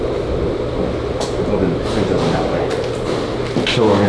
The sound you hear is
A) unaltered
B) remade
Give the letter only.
A